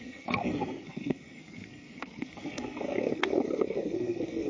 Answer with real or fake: fake